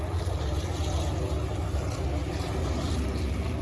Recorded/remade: recorded